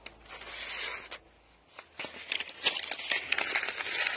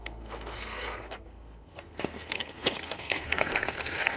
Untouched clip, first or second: first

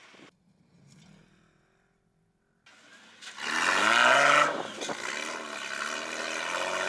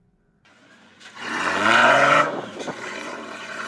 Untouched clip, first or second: first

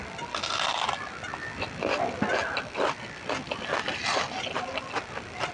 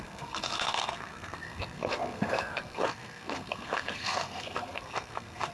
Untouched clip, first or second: first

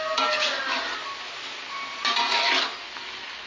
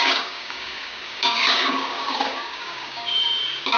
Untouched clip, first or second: first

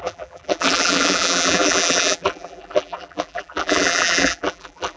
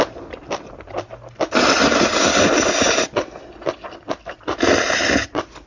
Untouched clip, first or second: second